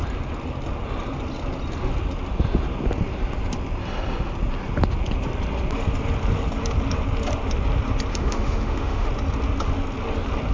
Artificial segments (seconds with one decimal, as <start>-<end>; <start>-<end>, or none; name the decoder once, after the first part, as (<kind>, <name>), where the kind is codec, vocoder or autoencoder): 8.1-9.1 (autoencoder, DAC-VAE)